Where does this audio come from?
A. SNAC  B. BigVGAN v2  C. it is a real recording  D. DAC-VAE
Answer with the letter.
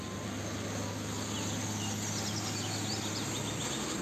C